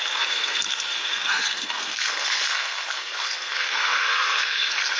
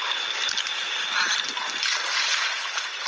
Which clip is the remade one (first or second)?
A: first